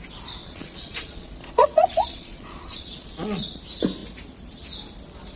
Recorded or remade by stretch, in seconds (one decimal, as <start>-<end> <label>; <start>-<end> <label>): 0.0-0.4 recorded; 0.4-3.6 remade; 3.6-5.4 recorded

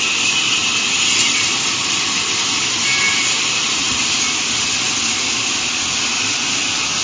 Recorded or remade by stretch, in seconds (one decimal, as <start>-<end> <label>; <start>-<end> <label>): 0.0-2.9 recorded; 2.9-4.4 remade; 4.4-7.0 recorded

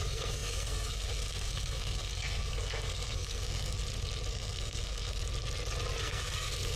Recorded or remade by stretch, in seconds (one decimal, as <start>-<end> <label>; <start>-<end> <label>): 0.0-3.8 remade; 3.8-4.3 recorded; 4.3-5.2 remade; 5.2-6.0 recorded; 6.0-6.8 remade

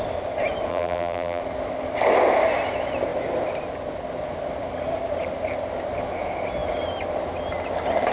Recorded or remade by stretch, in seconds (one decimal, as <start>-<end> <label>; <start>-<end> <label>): 0.0-0.7 recorded; 0.7-1.4 remade; 1.4-8.1 recorded

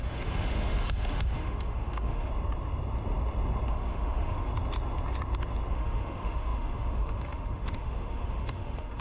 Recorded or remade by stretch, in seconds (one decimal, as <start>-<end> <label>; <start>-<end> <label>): 0.0-2.3 remade; 2.3-3.7 recorded; 3.7-4.5 remade; 4.5-5.7 recorded; 5.7-9.0 remade